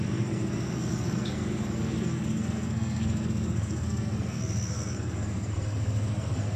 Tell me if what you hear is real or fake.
fake